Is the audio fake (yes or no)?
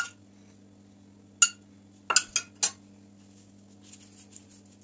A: no